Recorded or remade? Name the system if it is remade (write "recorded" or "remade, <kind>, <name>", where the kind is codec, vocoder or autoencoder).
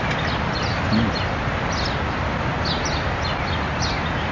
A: recorded